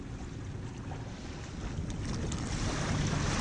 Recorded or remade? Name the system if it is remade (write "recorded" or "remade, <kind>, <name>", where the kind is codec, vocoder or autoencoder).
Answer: recorded